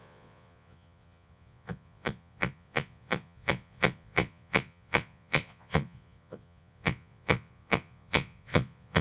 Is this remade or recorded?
remade